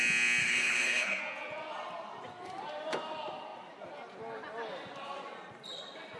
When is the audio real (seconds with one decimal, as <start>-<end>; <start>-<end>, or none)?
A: 0.0-0.4; 1.2-6.2